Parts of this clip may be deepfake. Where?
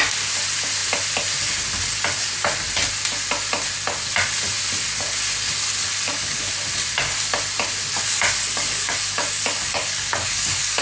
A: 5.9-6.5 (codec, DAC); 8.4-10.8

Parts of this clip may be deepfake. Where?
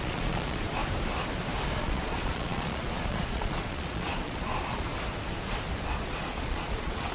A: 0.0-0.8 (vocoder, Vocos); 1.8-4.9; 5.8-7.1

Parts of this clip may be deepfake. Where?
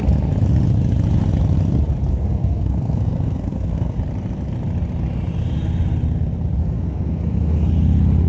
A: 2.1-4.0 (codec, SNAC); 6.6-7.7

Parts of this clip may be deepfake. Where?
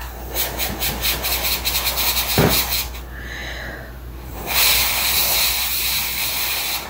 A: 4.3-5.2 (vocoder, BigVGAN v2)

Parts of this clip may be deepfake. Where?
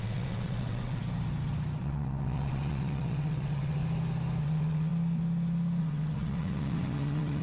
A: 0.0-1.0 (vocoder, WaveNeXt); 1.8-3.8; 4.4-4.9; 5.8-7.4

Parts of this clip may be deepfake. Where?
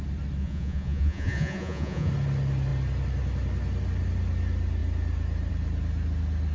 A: 0.4-2.1 (vocoder, Vocos)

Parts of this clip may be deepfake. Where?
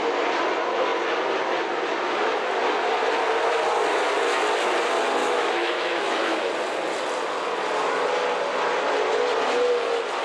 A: 5.2-6.5 (autoencoder, DAC-VAE)